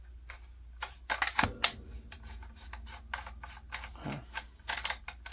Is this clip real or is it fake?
real